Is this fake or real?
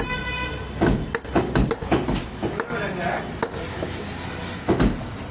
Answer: real